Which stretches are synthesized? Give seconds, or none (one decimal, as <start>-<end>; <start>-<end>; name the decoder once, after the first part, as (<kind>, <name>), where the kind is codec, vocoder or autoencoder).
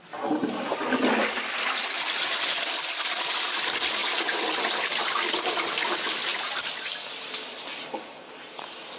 none